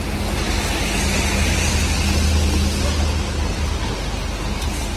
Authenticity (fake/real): real